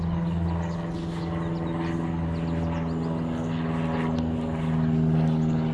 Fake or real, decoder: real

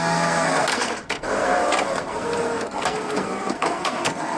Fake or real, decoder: fake, codec, SNAC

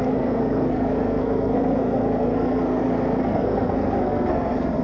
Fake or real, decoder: fake, codec, SNAC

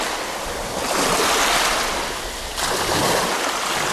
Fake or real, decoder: real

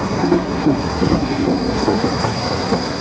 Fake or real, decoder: fake, codec, SNAC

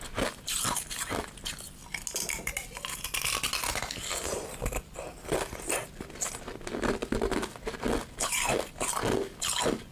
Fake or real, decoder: real